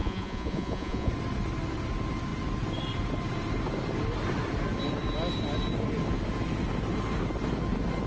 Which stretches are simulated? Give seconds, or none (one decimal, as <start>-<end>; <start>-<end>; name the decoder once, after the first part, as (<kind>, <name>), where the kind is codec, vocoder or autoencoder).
0.0-1.1 (vocoder, Vocos)